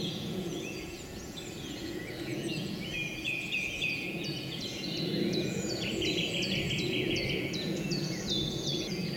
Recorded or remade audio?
remade